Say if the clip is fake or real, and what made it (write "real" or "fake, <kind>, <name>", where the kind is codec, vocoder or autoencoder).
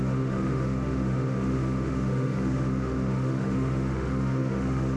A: fake, autoencoder, DAC-VAE